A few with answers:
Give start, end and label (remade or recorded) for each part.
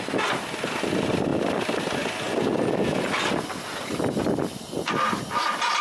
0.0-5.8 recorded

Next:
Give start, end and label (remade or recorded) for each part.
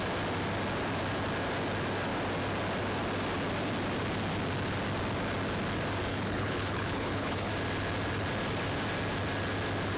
0.0-6.1 recorded; 6.1-7.5 remade; 7.5-10.0 recorded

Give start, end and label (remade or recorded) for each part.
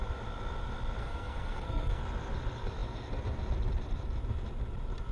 0.0-1.0 recorded; 1.0-2.0 remade; 2.0-5.1 recorded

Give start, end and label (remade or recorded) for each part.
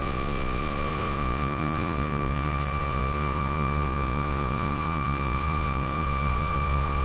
0.0-7.0 remade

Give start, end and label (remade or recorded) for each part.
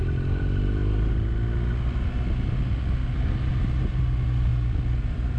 0.0-0.8 remade; 0.8-4.0 recorded; 4.0-4.5 remade; 4.5-5.0 recorded; 5.0-5.4 remade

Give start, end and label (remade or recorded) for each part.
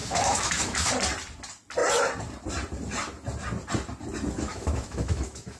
0.0-0.9 remade; 0.9-4.5 recorded; 4.5-5.6 remade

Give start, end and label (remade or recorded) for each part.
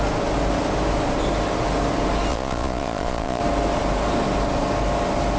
0.0-2.3 recorded; 2.3-3.4 remade; 3.4-5.4 recorded